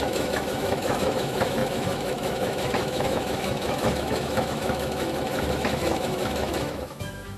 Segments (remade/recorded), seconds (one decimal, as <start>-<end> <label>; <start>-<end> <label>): 0.0-7.4 remade